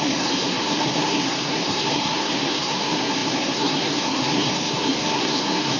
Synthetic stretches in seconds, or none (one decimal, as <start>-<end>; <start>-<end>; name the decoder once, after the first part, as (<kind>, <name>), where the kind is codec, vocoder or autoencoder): 0.0-5.8 (codec, SNAC)